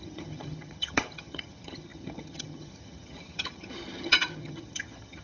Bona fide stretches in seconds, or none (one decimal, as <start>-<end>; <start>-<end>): none